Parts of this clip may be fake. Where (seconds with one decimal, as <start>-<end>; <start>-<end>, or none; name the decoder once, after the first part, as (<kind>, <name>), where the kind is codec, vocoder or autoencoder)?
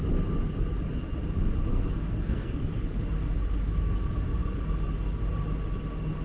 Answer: 1.7-2.7 (codec, SNAC)